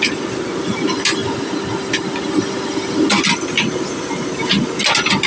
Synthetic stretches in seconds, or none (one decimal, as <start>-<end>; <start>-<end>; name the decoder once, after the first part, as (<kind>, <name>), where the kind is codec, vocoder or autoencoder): none

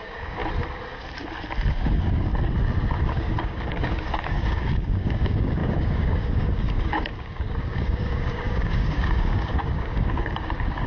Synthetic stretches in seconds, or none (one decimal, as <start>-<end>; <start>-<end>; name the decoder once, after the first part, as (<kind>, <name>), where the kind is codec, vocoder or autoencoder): 0.0-0.4 (codec, DAC); 1.7-2.3; 3.0-10.9

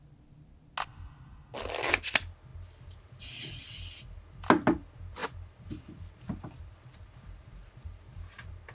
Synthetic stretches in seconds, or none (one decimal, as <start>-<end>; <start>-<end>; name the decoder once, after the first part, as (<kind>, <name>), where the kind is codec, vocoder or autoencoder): none

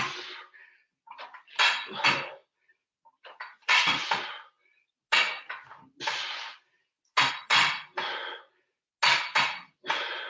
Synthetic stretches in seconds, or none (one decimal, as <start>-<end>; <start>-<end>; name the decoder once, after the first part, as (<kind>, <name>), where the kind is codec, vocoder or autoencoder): none

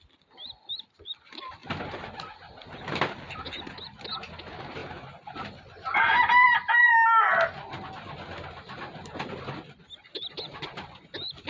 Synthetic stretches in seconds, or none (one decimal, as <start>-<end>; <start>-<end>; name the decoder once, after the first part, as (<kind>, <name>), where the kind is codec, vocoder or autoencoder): none

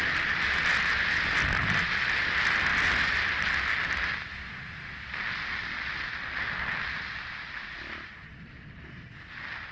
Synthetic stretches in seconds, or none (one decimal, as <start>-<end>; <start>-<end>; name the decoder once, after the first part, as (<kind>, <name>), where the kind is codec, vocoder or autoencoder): none

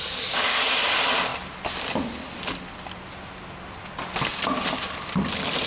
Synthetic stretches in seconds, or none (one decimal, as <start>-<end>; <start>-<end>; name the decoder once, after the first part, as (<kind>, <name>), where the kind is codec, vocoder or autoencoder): none

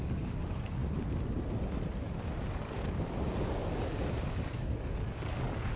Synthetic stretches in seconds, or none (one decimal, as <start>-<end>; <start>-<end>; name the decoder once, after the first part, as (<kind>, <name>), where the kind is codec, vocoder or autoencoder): 0.0-0.8 (codec, DAC); 4.3-5.8